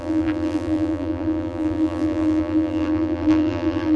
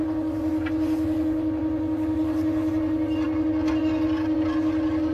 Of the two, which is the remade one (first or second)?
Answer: first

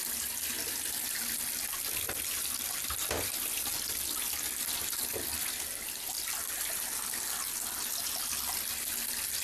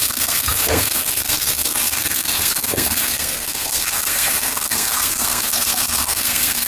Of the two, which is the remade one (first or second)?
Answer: second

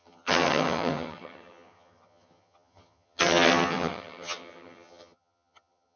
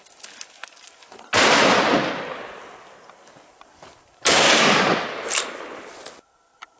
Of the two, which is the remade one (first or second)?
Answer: first